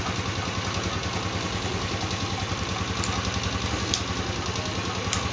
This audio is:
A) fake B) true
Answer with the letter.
B